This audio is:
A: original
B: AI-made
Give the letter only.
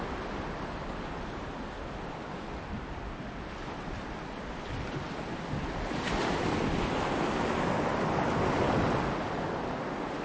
A